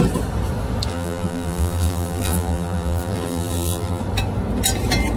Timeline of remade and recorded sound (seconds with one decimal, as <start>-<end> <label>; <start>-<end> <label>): 0.0-0.9 recorded; 0.9-4.0 remade; 4.0-5.2 recorded